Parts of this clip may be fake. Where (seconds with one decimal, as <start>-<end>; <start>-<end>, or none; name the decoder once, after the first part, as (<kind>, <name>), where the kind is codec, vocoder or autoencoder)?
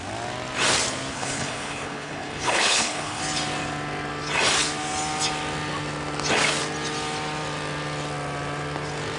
1.1-3.2 (codec, HILCodec)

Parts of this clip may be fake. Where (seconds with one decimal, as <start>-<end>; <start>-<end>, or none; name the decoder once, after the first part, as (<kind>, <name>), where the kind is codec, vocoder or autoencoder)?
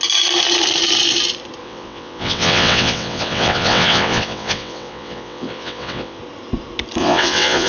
1.6-6.2 (vocoder, WaveNeXt); 7.0-7.7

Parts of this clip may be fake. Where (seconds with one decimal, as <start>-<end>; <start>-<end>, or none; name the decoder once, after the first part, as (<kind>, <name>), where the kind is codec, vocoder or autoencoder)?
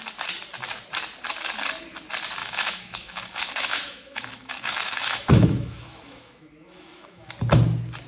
2.4-7.3 (autoencoder, DAC-VAE)